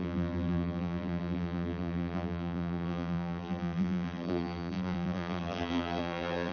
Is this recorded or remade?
remade